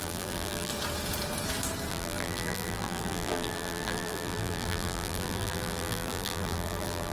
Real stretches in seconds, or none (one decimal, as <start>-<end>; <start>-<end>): 0.7-1.9